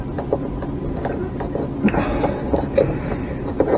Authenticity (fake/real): real